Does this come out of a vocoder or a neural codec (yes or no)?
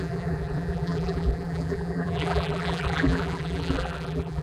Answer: yes